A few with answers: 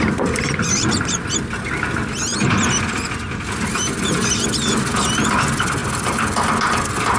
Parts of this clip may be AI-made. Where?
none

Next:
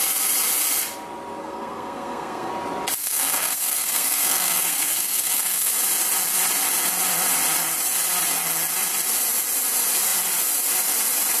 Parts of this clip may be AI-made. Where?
1.4-2.5 (codec, SNAC); 3.0-5.7

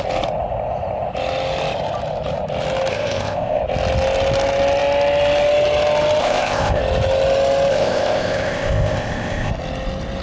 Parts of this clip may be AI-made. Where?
2.9-3.6 (codec, ZipCodec); 6.2-6.8; 7.7-9.5

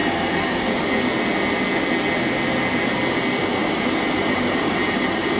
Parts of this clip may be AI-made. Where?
3.6-5.4 (vocoder, BigVGAN v2)

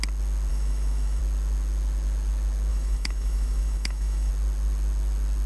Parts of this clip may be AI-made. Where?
0.5-1.2 (autoencoder, DAC-VAE); 2.7-4.3

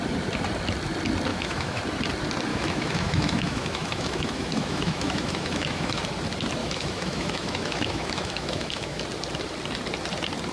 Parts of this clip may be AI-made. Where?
1.3-1.8 (autoencoder, DAC-VAE); 2.5-6.0; 6.6-9.0

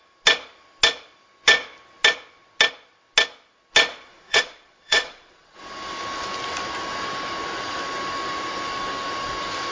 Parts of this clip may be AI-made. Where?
4.1-5.6 (vocoder, Vocos)